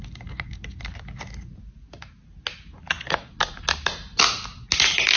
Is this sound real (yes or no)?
yes